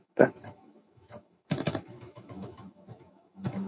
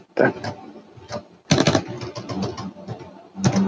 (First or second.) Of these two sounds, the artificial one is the first